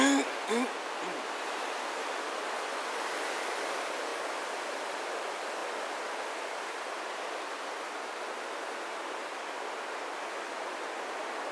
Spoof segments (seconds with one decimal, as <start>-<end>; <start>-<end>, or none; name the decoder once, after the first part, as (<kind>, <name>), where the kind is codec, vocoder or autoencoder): none